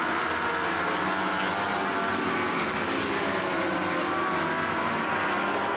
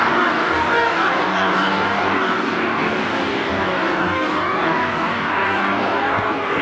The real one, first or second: first